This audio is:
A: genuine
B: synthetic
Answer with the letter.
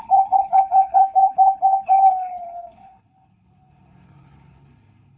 B